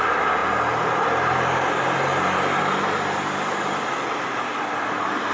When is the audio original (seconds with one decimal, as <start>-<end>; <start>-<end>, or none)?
0.0-5.3